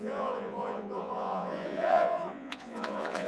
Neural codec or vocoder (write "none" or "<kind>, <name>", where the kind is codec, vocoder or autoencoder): vocoder, Vocos